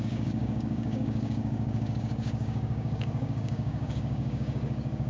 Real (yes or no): no